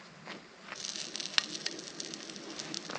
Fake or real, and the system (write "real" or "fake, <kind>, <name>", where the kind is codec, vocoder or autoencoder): real